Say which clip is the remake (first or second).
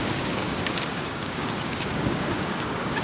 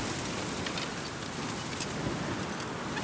first